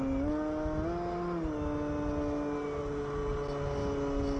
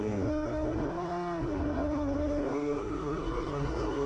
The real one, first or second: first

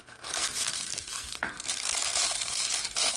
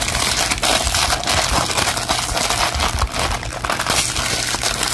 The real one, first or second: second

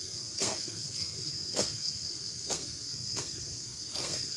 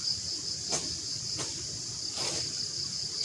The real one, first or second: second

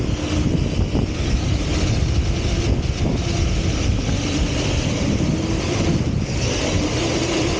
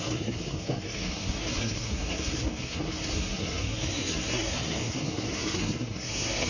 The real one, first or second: first